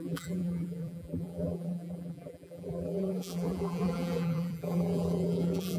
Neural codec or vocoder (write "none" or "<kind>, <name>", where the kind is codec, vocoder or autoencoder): vocoder, BigVGAN v2